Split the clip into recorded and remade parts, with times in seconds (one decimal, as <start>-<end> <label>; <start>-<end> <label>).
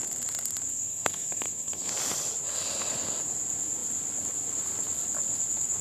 0.0-0.7 recorded; 0.7-1.9 remade; 1.9-5.8 recorded